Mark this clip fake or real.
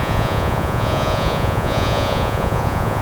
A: fake